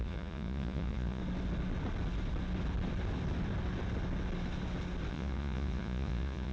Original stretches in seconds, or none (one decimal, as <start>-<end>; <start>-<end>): 1.2-5.1